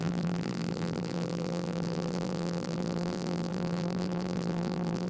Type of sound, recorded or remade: remade